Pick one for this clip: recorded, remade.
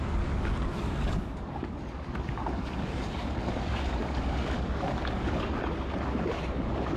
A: remade